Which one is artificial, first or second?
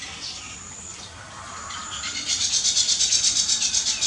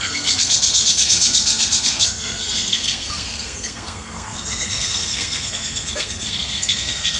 second